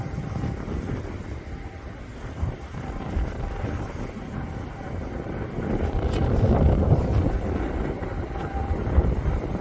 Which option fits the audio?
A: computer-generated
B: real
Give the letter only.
A